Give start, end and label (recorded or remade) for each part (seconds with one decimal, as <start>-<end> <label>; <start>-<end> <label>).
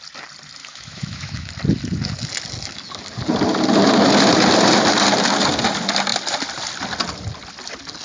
0.0-0.6 recorded; 0.6-1.5 remade; 1.5-8.0 recorded